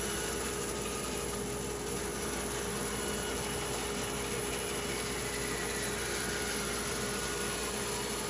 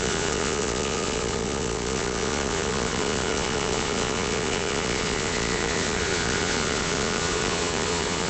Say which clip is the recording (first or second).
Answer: first